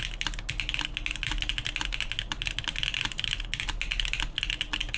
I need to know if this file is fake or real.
real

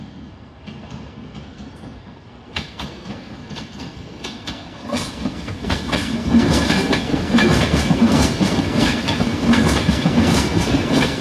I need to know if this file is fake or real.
fake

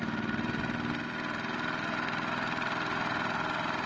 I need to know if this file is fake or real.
real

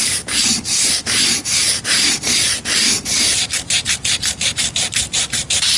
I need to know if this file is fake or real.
fake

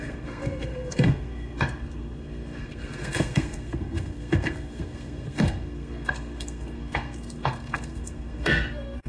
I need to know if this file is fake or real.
fake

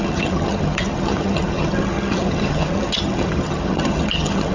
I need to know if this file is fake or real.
fake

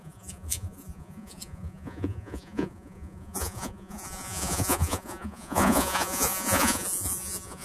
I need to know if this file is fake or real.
fake